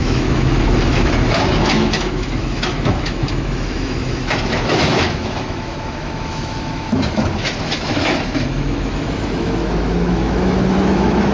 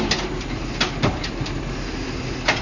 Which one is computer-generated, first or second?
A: first